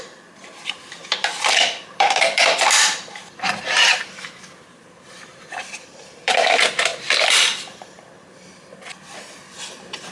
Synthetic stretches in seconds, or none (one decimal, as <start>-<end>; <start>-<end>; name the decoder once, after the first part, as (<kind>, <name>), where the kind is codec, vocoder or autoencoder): 0.0-10.1 (vocoder, BigVGAN v2)